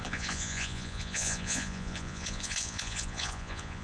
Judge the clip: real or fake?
fake